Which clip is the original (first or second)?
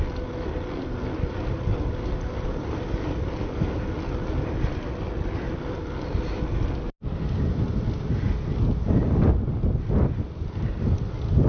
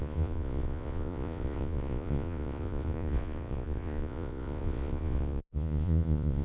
first